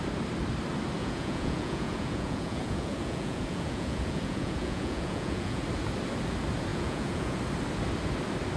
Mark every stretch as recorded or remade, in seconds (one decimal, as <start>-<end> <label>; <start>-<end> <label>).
0.0-1.0 recorded; 1.0-5.6 remade; 5.6-6.7 recorded; 6.7-7.4 remade; 7.4-8.6 recorded